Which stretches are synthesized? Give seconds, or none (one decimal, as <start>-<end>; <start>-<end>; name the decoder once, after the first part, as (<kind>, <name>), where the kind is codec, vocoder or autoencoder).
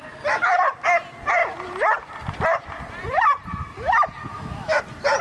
4.3-4.8 (autoencoder, DAC-VAE)